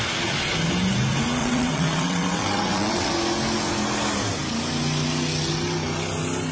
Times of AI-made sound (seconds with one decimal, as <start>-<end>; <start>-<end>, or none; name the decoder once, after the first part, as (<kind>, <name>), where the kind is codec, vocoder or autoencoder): 1.4-3.1 (vocoder, WaveNeXt)